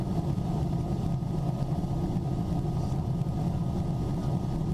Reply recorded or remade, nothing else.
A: recorded